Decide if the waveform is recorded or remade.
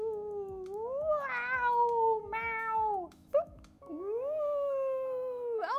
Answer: remade